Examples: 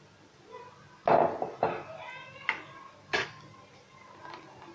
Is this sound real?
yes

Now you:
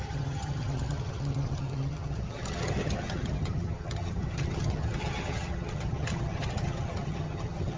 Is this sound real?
no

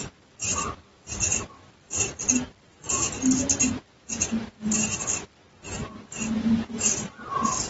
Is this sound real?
yes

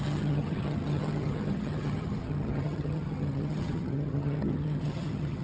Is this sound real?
no